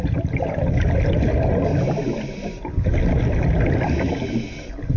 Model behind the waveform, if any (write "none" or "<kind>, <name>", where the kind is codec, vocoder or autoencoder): none